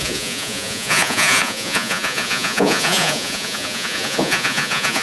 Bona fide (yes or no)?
no